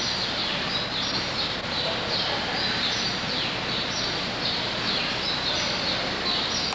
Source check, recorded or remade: recorded